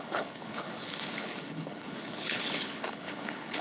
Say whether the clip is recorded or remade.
remade